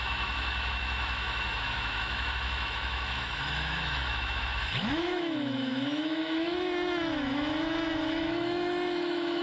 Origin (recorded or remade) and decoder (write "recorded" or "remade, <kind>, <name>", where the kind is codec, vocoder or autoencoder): remade, autoencoder, DAC-VAE